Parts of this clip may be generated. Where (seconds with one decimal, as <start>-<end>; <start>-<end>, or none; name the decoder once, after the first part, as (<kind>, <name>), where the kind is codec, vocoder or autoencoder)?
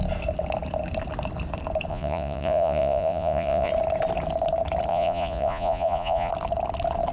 1.9-3.7 (vocoder, Vocos); 4.9-6.3